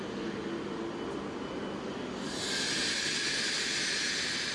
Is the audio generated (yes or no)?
no